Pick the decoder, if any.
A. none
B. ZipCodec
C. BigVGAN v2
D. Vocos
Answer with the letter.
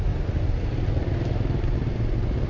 A